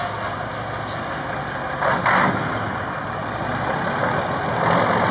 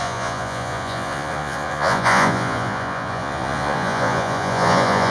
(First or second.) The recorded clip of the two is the first